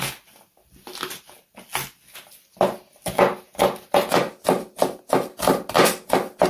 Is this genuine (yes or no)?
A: yes